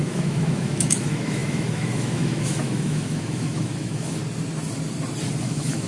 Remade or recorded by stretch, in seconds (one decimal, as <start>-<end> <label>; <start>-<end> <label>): 0.0-4.2 remade; 4.2-5.4 recorded; 5.4-5.9 remade